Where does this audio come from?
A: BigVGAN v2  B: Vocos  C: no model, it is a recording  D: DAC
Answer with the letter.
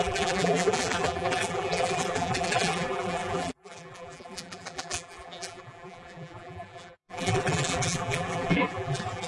A